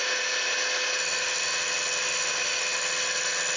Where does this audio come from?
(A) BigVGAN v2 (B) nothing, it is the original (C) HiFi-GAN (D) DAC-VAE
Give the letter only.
B